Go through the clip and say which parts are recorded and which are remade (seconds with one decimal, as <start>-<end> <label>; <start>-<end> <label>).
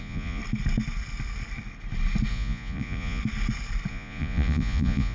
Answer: 0.0-0.4 remade; 0.4-2.3 recorded; 2.3-3.2 remade; 3.2-3.9 recorded; 3.9-5.1 remade